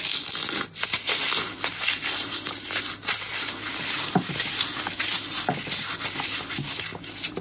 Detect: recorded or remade recorded